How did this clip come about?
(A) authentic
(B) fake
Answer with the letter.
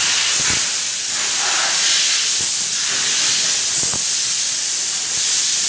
A